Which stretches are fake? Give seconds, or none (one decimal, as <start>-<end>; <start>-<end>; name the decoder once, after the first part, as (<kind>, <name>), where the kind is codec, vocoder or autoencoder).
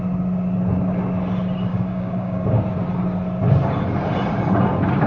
1.7-2.6 (codec, DAC)